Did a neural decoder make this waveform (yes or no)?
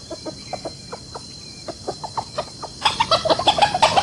no